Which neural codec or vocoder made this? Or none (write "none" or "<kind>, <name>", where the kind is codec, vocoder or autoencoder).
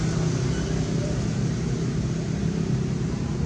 none